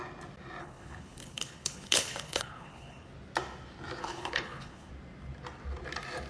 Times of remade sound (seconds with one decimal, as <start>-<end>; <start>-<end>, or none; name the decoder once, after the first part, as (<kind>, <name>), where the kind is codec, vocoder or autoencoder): 0.6-3.1 (codec, HILCodec); 4.0-4.9